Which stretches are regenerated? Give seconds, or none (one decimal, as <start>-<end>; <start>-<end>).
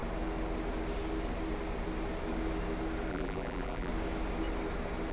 3.1-3.9